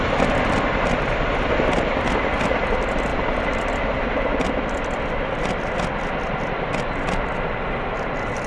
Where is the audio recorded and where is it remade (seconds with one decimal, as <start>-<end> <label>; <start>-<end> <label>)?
0.0-8.5 recorded